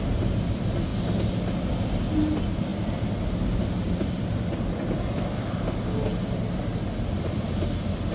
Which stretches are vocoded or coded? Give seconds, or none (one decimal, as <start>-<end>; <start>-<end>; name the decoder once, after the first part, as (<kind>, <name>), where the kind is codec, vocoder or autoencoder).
none